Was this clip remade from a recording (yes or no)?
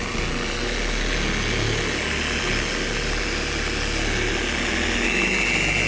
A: no